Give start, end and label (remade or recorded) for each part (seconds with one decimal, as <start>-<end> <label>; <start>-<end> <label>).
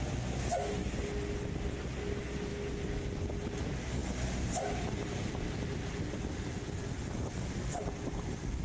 0.0-8.6 recorded